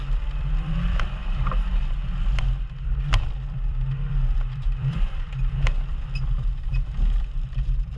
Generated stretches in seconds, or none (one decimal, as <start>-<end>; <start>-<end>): 0.0-1.2; 2.4-8.0